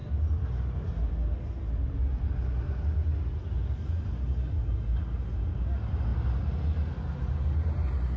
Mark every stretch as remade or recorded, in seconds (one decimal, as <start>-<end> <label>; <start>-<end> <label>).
0.0-8.2 recorded